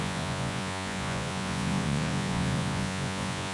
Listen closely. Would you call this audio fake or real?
fake